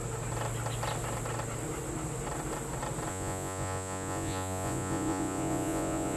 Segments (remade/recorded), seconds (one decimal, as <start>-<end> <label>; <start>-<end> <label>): 0.0-3.1 recorded; 3.1-6.2 remade